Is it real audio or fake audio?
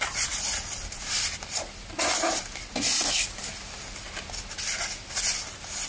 real